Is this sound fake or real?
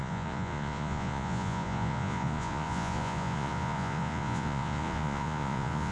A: fake